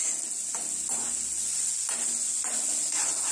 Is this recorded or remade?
recorded